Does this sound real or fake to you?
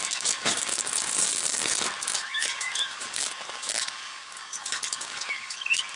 fake